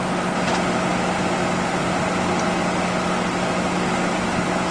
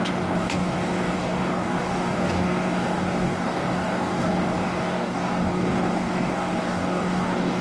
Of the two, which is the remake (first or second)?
second